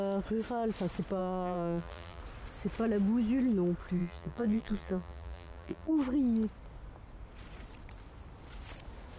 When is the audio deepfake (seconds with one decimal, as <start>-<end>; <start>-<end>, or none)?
1.2-2.2; 4.0-5.9